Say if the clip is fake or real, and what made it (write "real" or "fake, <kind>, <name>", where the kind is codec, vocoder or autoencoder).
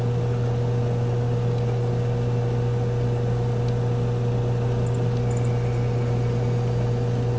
real